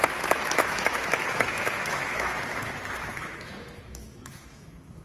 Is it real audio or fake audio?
fake